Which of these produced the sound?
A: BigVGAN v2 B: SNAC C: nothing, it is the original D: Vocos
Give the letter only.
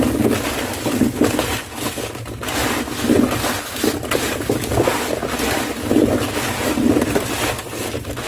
C